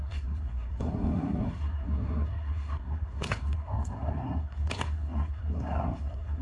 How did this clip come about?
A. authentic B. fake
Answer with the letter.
B